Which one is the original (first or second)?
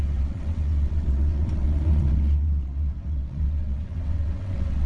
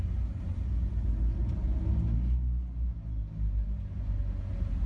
second